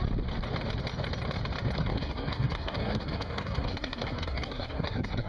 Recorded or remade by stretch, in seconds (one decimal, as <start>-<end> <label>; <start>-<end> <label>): 0.0-1.8 recorded; 1.8-5.3 remade